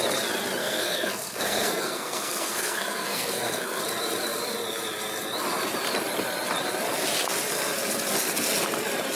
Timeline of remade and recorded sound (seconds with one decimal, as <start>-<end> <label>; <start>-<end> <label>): 0.0-0.6 recorded; 0.6-3.8 remade; 3.8-9.2 recorded